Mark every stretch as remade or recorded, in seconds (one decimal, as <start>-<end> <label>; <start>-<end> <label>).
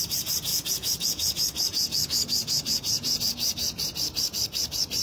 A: 0.0-0.5 recorded; 0.5-3.2 remade; 3.2-5.0 recorded